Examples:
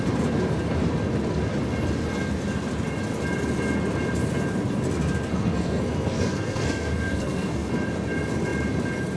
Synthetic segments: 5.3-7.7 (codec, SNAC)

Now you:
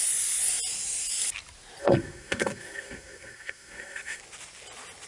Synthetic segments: 1.8-4.2 (codec, SNAC)

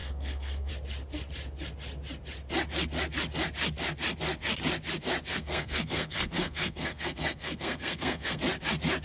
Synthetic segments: 0.0-0.7 (codec, SNAC); 5.3-8.4

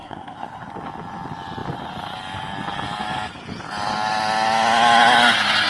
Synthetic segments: 0.0-0.7 (codec, SNAC)

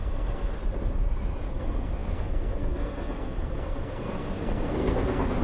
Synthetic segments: 0.0-0.6 (codec, SNAC); 1.6-5.4